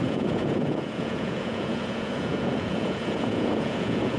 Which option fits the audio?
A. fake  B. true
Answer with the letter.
A